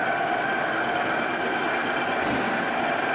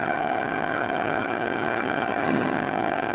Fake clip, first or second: second